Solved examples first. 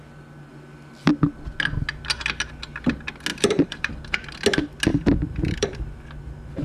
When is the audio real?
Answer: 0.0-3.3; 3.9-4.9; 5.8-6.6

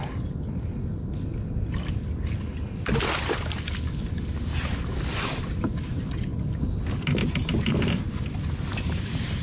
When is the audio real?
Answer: 0.0-9.4